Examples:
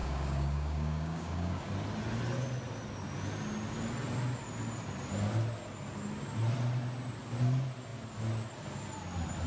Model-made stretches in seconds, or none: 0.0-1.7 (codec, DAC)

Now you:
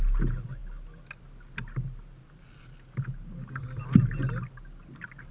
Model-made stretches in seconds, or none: none

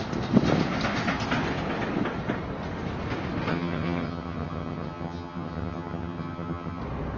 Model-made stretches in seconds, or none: 3.5-6.8 (vocoder, HiFi-GAN)

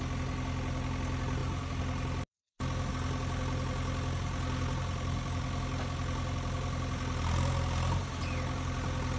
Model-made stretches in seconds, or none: none

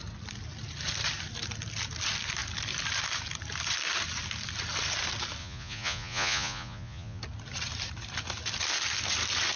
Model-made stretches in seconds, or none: 5.4-7.2 (vocoder, Vocos)

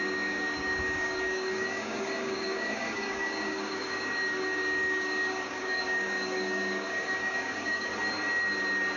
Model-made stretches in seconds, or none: 0.0-7.9 (codec, DAC)

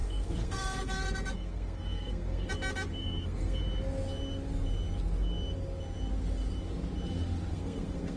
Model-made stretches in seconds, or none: 0.0-2.5 (codec, SNAC); 3.0-3.6; 7.5-8.2